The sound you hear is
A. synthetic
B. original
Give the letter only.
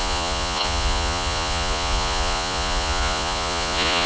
A